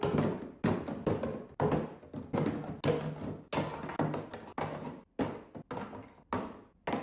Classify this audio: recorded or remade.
recorded